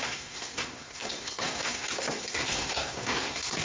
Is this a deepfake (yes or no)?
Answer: yes